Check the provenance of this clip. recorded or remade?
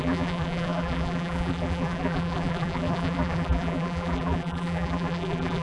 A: remade